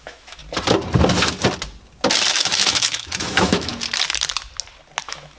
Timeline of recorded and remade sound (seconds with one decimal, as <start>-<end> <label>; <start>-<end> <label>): 0.0-0.4 remade; 0.4-2.3 recorded; 2.3-3.7 remade; 3.7-5.0 recorded; 5.0-5.4 remade

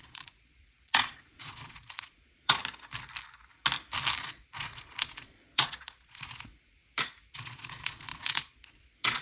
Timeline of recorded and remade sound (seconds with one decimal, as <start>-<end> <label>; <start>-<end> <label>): 0.0-2.6 remade; 2.6-4.2 recorded; 4.2-6.8 remade; 6.8-7.3 recorded; 7.3-9.2 remade

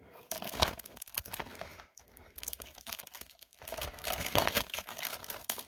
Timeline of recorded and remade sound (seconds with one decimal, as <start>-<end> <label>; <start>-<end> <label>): 0.0-5.7 remade

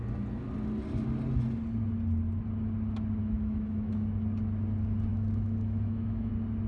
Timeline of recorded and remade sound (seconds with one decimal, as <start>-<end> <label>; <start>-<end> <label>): 0.0-3.2 recorded; 3.2-3.9 remade; 3.9-5.1 recorded; 5.1-6.3 remade; 6.3-6.7 recorded

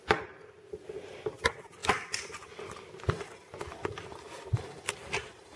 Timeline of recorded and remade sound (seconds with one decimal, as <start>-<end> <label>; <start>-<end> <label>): 0.0-5.6 recorded

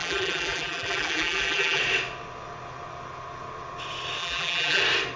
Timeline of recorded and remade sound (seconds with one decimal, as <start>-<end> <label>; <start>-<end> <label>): 0.0-1.8 remade; 1.8-4.2 recorded; 4.2-4.8 remade; 4.8-5.2 recorded